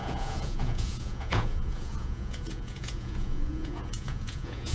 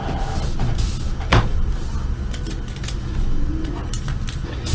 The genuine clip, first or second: second